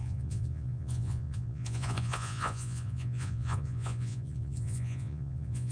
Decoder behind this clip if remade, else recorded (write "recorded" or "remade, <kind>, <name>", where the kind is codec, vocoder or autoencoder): remade, vocoder, Vocos